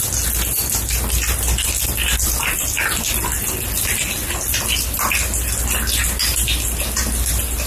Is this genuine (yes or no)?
yes